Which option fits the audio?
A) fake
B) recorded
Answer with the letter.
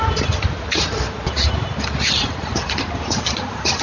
B